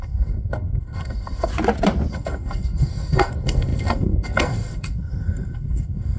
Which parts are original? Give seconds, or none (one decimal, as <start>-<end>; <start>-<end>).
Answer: 1.5-2.1